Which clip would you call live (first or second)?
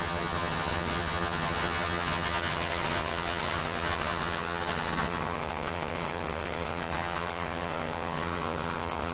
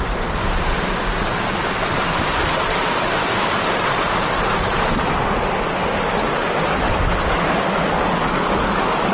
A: second